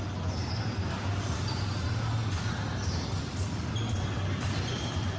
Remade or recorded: recorded